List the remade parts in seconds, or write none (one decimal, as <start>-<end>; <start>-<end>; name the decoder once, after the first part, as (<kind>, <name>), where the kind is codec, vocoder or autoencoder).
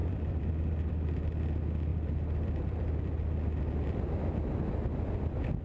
0.0-0.9 (vocoder, BigVGAN v2); 1.9-3.6